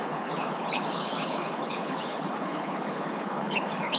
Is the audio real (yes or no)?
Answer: no